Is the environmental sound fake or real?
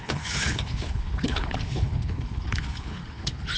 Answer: fake